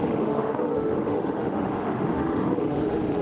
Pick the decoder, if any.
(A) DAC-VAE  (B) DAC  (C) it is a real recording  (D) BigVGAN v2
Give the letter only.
A